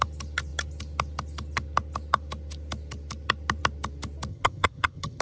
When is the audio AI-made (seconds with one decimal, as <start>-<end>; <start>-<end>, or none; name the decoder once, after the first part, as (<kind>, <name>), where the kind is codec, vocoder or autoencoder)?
4.3-5.2 (vocoder, HiFi-GAN)